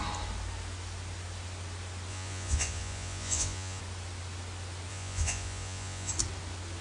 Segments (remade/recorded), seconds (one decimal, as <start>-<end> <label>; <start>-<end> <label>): 0.0-2.1 recorded; 2.1-3.8 remade; 3.8-4.9 recorded; 4.9-6.1 remade; 6.1-6.8 recorded